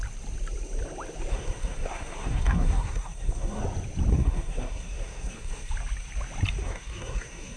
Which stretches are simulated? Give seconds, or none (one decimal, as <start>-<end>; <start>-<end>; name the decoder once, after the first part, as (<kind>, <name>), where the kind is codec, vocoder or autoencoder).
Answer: 1.3-3.6 (codec, SNAC); 4.1-5.7; 6.6-7.6